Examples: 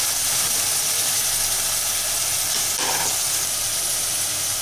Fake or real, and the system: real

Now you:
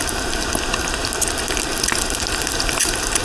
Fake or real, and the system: real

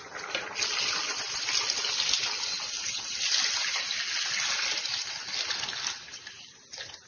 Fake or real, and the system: real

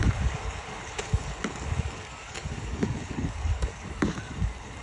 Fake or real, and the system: fake, codec, DAC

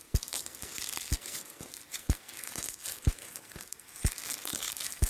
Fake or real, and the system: fake, codec, SNAC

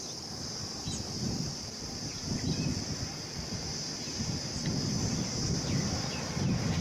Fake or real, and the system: real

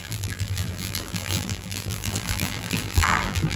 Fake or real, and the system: fake, vocoder, BigVGAN v2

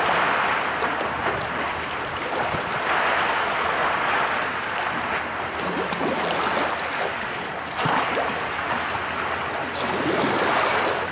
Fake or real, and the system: real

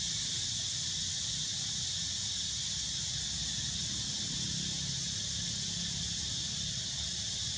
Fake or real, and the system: real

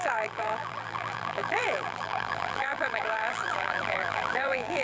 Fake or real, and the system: fake, vocoder, BigVGAN v2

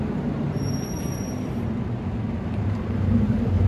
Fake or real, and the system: fake, vocoder, BigVGAN v2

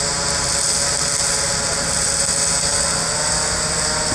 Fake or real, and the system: real